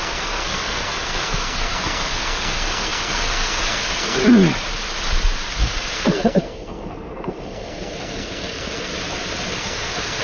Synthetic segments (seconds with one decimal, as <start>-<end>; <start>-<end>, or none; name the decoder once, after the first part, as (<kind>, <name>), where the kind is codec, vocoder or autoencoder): 0.0-4.2 (codec, SNAC); 5.6-8.9; 9.5-10.2